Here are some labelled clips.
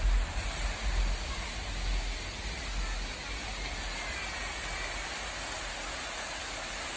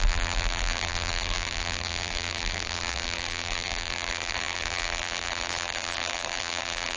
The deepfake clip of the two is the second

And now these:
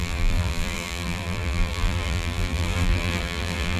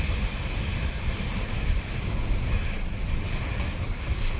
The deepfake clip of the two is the first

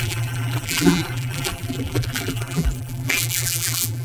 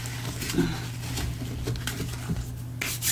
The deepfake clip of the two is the first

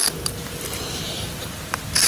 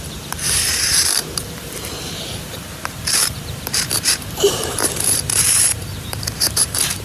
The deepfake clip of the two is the second